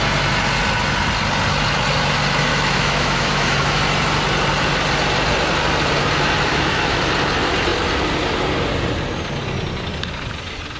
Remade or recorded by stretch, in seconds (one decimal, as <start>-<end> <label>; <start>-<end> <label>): 0.0-2.5 recorded; 2.5-3.8 remade; 3.8-6.5 recorded; 6.5-7.0 remade; 7.0-10.8 recorded